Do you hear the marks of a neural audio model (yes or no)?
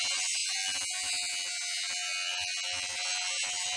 no